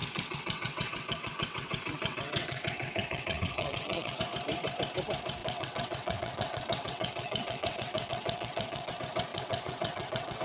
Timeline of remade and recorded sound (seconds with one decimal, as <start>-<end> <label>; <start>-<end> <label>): 0.0-4.2 remade; 4.2-5.4 recorded; 5.4-8.9 remade; 8.9-9.3 recorded; 9.3-10.4 remade